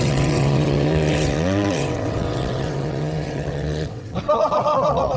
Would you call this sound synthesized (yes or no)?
yes